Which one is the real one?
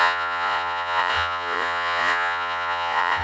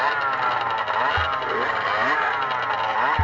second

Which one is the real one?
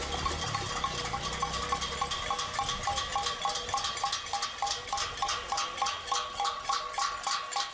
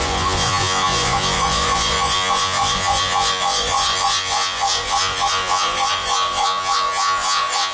first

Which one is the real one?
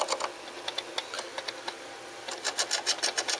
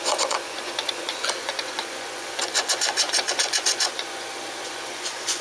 first